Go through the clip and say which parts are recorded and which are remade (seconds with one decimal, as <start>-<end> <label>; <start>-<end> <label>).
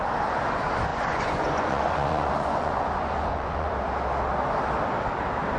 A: 0.0-0.9 recorded; 0.9-3.7 remade; 3.7-5.6 recorded